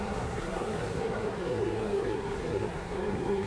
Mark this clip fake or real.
fake